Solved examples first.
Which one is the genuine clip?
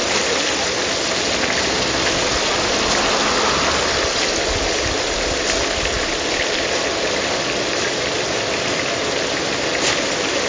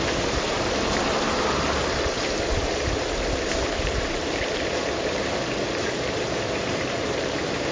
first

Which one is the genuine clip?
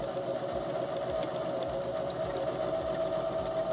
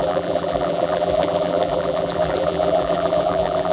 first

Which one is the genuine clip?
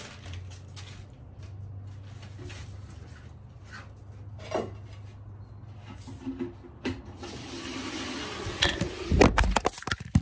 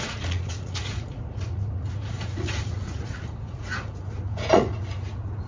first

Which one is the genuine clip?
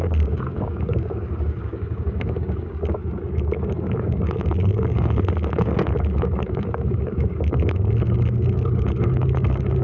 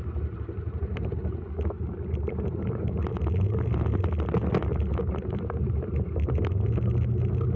second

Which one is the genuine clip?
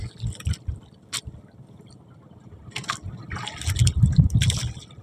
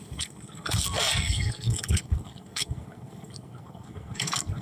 first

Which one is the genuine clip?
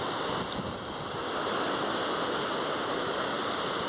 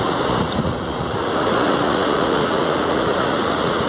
first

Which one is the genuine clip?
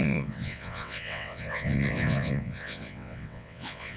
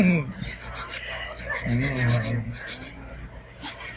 second